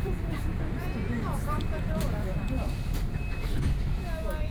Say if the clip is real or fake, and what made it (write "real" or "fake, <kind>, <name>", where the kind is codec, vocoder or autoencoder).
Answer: fake, vocoder, BigVGAN v2